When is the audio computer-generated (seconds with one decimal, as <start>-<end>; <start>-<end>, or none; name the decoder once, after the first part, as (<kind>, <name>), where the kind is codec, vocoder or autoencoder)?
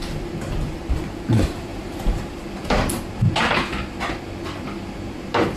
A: 1.7-2.2 (vocoder, BigVGAN v2)